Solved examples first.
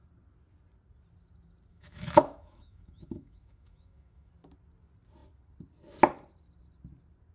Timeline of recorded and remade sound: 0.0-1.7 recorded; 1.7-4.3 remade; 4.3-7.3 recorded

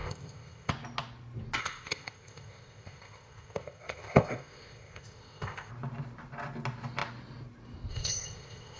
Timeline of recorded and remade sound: 0.0-0.7 remade; 0.7-1.6 recorded; 1.6-5.7 remade; 5.7-7.9 recorded; 7.9-8.8 remade

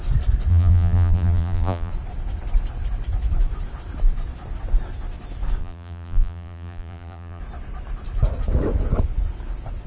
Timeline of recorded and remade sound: 0.0-0.5 recorded; 0.5-1.9 remade; 1.9-5.6 recorded; 5.6-7.4 remade; 7.4-9.9 recorded

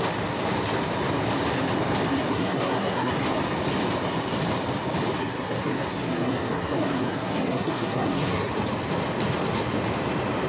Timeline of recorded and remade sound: 0.0-2.3 recorded; 2.3-3.1 remade; 3.1-5.2 recorded; 5.2-8.5 remade; 8.5-10.5 recorded

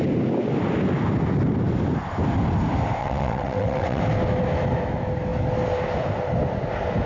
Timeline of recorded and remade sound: 0.0-3.0 recorded; 3.0-4.0 remade; 4.0-7.1 recorded

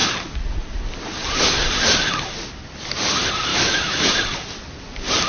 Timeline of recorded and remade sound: 0.0-3.5 recorded; 3.5-4.1 remade; 4.1-5.3 recorded

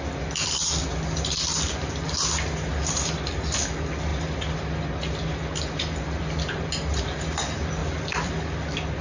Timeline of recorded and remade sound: 0.0-7.8 recorded; 7.8-8.3 remade; 8.3-9.0 recorded